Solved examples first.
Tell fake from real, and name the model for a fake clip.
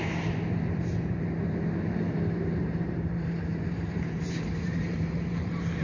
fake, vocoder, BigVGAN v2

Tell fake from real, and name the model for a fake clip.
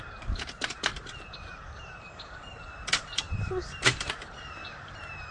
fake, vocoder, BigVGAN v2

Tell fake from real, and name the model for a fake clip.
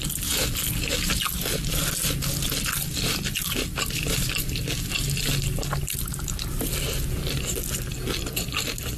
real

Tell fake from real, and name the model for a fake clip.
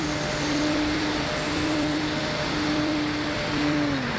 fake, vocoder, BigVGAN v2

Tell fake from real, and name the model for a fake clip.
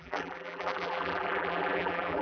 fake, vocoder, BigVGAN v2